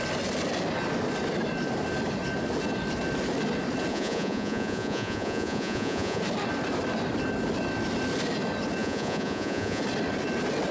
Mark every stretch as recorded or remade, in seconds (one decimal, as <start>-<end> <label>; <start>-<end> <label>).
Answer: 0.0-3.9 recorded; 3.9-6.2 remade; 6.2-8.8 recorded; 8.8-9.8 remade; 9.8-10.7 recorded